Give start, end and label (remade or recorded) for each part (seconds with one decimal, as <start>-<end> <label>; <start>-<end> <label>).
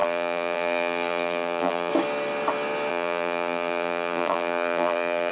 0.0-1.9 remade; 1.9-2.9 recorded; 2.9-5.3 remade